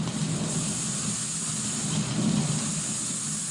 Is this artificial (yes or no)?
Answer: no